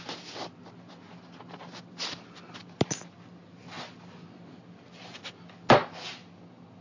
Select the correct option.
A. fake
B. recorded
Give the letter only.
B